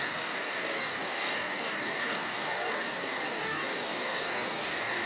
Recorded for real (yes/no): no